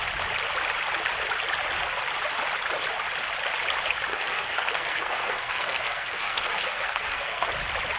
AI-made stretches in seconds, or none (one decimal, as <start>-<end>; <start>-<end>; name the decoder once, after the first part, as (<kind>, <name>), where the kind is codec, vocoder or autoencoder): 4.1-7.5 (codec, SNAC)